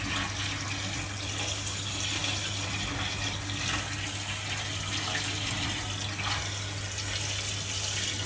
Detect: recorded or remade recorded